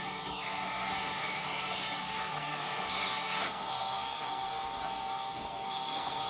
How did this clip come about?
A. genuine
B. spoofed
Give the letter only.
B